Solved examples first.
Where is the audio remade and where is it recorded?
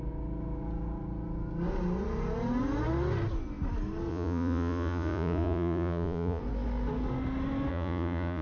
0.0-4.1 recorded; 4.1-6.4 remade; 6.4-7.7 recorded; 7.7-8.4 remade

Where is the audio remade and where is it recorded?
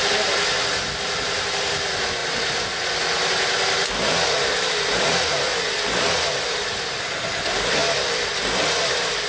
0.0-9.3 recorded